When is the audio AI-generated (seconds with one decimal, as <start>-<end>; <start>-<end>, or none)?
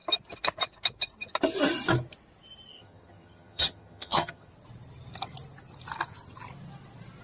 2.7-4.5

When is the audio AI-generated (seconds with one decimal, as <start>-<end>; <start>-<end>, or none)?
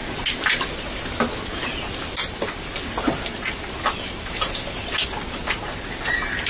none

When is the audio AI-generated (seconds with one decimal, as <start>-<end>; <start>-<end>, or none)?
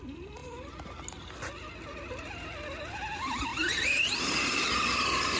none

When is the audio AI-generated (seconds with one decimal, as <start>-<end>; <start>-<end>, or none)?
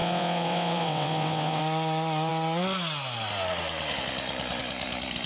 0.0-1.6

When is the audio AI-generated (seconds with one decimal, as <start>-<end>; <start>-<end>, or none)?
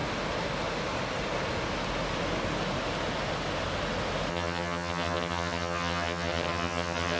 4.3-7.2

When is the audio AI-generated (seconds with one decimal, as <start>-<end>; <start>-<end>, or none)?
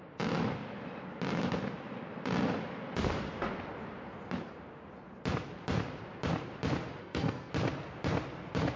7.0-7.5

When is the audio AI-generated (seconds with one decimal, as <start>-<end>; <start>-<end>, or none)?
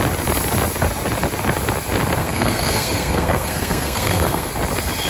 2.2-4.5